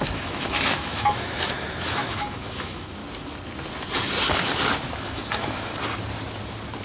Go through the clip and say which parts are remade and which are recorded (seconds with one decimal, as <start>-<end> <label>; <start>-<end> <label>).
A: 0.0-3.0 remade; 3.0-4.9 recorded; 4.9-5.7 remade; 5.7-6.8 recorded